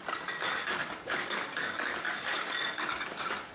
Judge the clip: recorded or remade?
remade